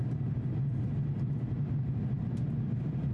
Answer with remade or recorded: recorded